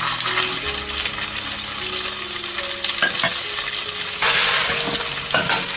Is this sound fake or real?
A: real